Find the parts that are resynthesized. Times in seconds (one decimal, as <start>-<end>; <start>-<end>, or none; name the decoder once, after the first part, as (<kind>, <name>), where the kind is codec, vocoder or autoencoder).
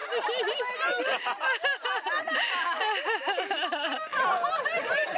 none